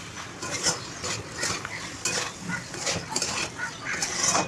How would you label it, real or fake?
real